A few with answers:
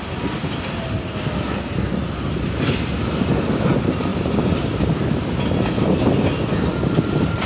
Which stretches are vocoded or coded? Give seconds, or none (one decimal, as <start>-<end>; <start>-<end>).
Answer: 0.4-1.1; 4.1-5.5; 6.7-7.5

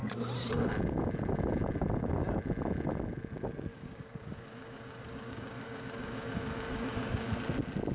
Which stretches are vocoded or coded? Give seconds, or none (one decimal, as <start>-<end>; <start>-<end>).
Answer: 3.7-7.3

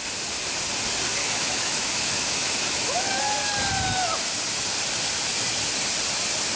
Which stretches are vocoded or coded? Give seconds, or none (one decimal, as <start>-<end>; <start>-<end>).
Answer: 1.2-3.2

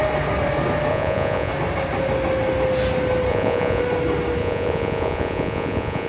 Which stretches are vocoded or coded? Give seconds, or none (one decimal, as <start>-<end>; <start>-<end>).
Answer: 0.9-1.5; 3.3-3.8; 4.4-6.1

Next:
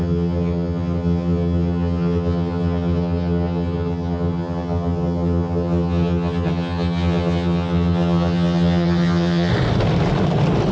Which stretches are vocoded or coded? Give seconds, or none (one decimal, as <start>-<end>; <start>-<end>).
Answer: 0.0-9.5

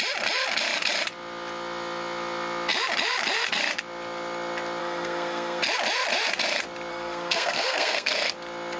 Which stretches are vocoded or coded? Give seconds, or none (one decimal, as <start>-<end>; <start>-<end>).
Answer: 4.8-5.6; 6.9-8.3